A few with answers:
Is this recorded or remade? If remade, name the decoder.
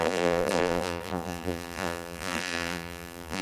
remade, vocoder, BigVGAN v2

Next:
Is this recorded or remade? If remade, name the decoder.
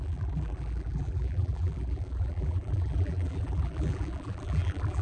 remade, vocoder, BigVGAN v2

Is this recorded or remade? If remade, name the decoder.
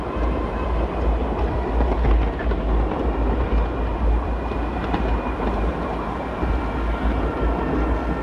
recorded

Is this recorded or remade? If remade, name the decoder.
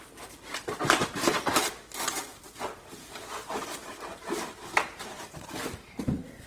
remade, vocoder, BigVGAN v2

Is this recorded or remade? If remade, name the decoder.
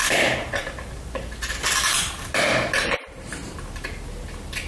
remade, vocoder, BigVGAN v2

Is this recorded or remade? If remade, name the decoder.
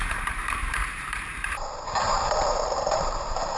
remade, vocoder, BigVGAN v2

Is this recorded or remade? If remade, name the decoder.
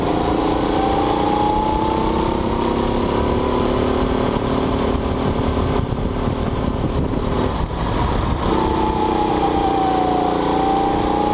recorded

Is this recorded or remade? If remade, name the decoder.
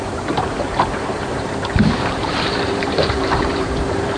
remade, vocoder, BigVGAN v2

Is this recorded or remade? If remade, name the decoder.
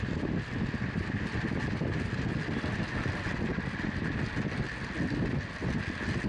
recorded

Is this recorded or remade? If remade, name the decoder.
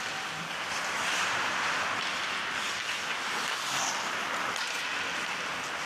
recorded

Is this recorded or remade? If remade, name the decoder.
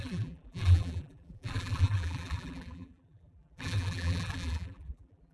remade, vocoder, BigVGAN v2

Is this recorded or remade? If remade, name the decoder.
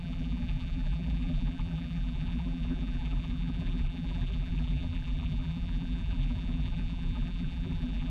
remade, vocoder, BigVGAN v2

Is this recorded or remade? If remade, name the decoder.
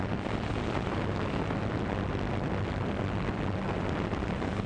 recorded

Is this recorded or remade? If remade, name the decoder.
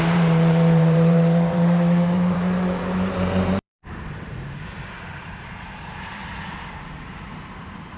remade, vocoder, BigVGAN v2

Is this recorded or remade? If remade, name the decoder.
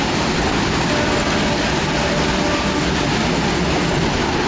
recorded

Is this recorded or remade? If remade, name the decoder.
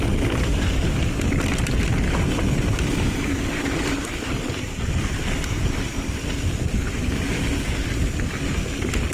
recorded